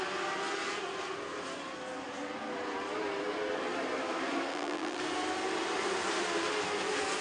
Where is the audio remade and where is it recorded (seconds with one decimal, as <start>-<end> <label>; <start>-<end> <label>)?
0.0-4.5 recorded; 4.5-5.0 remade; 5.0-7.2 recorded